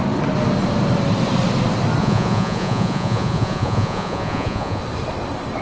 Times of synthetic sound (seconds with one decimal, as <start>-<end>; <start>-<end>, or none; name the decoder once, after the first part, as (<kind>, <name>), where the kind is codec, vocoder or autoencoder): 2.0-4.8 (vocoder, Vocos)